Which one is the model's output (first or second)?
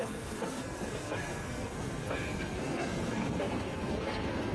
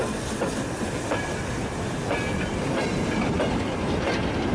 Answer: first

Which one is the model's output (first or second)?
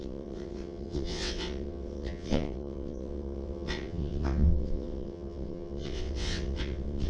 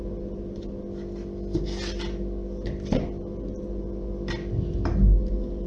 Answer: first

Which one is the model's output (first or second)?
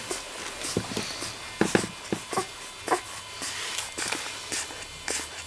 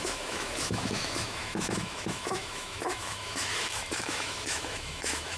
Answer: second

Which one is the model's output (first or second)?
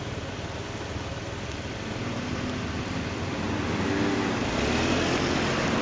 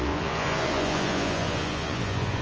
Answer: second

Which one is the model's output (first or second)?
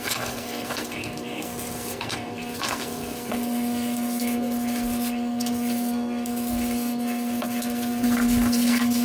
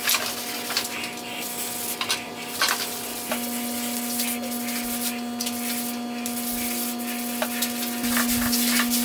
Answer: first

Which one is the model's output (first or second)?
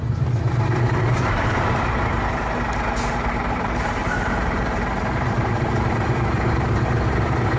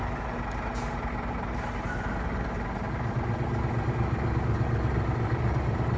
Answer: first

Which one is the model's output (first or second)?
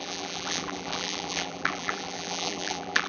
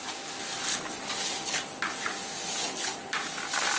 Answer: first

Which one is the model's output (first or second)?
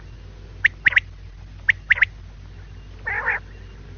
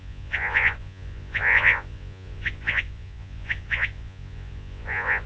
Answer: second